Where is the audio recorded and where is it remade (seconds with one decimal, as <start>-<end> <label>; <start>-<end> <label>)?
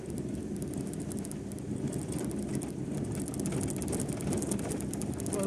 0.0-5.5 recorded